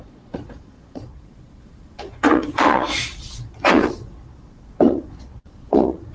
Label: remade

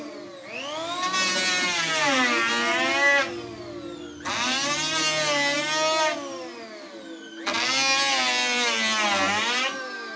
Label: recorded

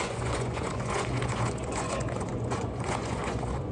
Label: remade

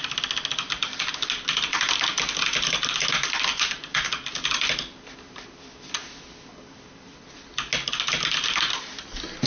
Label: recorded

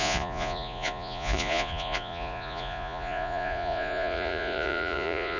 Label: remade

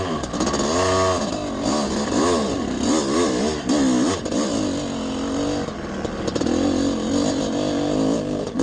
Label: recorded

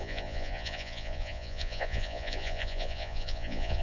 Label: remade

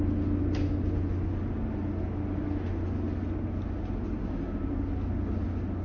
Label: recorded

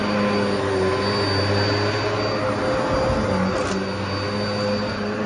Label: recorded